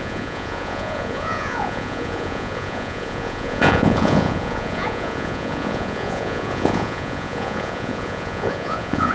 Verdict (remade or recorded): remade